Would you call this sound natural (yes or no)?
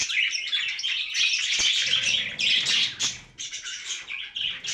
yes